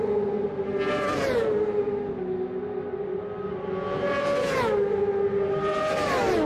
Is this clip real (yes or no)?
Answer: yes